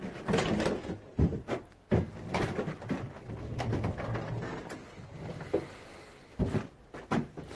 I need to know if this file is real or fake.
real